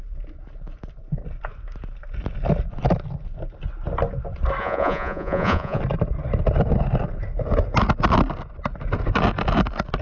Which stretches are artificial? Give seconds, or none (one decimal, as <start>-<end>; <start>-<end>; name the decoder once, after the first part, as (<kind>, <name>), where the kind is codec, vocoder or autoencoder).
4.6-5.8 (vocoder, Vocos)